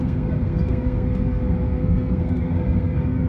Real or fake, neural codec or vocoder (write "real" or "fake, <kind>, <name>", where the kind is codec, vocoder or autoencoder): fake, codec, SNAC